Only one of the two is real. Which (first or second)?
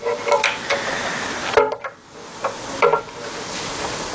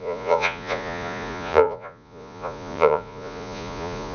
first